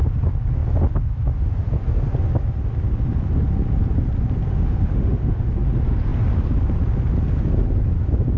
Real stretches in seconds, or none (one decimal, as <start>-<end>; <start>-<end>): 0.0-4.5; 5.5-8.4